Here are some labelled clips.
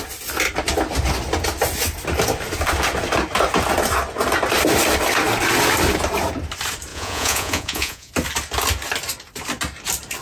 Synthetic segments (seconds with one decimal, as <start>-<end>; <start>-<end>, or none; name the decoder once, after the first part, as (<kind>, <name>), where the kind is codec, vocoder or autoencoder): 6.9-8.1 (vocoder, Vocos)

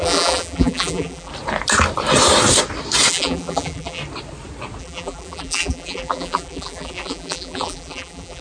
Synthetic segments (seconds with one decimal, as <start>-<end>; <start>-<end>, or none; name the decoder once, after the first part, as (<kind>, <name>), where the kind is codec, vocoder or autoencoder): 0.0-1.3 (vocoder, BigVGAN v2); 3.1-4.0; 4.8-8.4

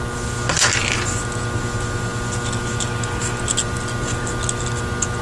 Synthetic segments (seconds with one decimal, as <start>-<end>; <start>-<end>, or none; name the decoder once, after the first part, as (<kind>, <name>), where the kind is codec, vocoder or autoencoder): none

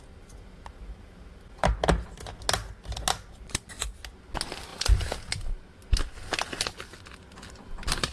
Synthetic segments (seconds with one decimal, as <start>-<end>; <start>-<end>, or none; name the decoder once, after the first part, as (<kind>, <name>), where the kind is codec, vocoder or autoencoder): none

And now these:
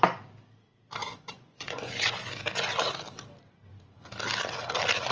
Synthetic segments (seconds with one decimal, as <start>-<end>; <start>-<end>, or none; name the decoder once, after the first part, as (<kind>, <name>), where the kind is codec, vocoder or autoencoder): 1.0-1.9 (vocoder, Vocos)

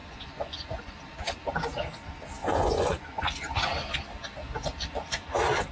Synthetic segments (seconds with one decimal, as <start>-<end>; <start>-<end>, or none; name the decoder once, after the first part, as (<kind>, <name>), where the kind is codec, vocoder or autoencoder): 0.0-1.0 (vocoder, Vocos); 2.4-3.2